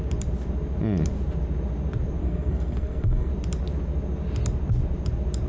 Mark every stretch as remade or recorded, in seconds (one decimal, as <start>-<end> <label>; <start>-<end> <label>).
0.0-2.2 recorded; 2.2-3.3 remade; 3.3-5.5 recorded